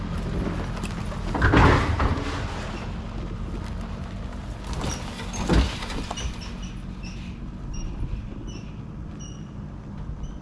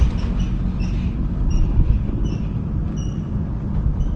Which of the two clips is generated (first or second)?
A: second